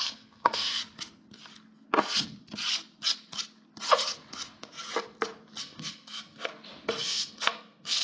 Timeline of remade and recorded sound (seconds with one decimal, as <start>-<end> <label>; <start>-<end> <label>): 0.0-0.8 remade; 0.8-5.6 recorded; 5.6-6.5 remade; 6.5-7.0 recorded; 7.0-8.0 remade